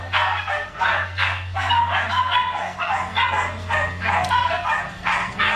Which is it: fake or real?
fake